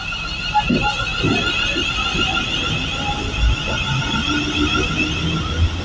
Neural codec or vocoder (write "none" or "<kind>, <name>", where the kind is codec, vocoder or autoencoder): none